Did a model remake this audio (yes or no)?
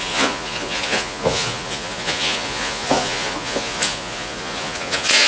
yes